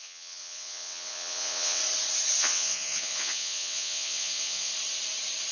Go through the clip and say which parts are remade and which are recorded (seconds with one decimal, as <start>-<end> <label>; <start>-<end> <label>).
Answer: 0.0-1.8 remade; 1.8-2.4 recorded; 2.4-4.7 remade; 4.7-5.5 recorded